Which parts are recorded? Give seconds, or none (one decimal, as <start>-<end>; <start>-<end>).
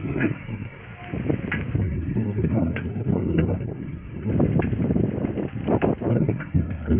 0.8-1.8; 4.3-6.1